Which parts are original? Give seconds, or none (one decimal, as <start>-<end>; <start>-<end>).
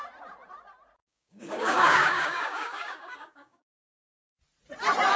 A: 0.0-1.0; 4.1-5.2